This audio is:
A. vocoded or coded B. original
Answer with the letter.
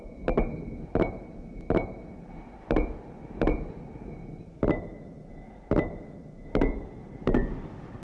B